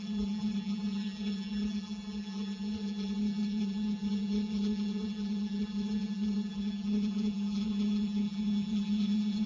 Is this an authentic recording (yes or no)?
no